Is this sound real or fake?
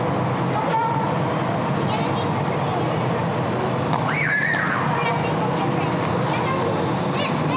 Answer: real